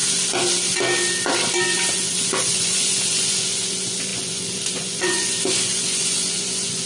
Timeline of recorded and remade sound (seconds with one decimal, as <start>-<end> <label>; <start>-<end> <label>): 0.0-1.9 recorded; 1.9-6.9 remade